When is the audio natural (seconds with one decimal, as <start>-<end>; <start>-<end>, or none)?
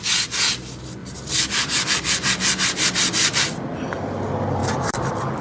0.0-1.0; 1.9-4.6